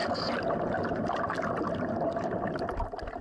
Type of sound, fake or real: real